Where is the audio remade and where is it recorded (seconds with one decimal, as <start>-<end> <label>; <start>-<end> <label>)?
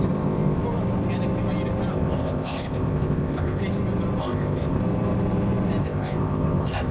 0.0-0.6 remade; 0.6-1.9 recorded; 1.9-3.6 remade; 3.6-4.2 recorded; 4.2-4.8 remade; 4.8-5.8 recorded; 5.8-6.9 remade